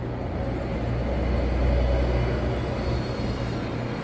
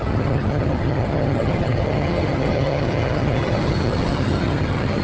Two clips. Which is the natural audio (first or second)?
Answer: first